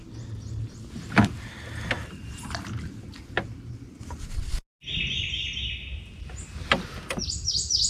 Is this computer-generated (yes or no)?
no